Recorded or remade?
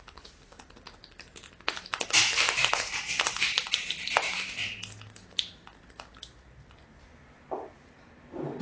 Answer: recorded